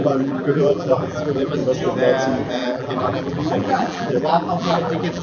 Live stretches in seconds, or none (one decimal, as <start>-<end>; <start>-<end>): 1.6-2.5